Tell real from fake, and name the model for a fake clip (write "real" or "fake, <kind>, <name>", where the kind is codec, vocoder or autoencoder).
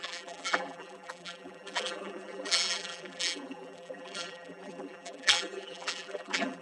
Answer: fake, vocoder, BigVGAN v2